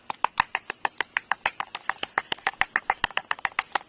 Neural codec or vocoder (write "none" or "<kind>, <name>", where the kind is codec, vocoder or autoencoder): none